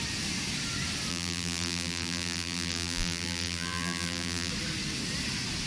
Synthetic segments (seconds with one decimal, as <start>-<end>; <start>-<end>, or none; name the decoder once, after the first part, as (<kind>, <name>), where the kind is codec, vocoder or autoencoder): 1.1-4.5 (vocoder, BigVGAN v2)